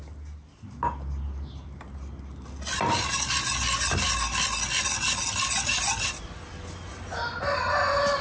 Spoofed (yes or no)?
no